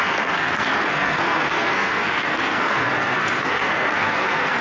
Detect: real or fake fake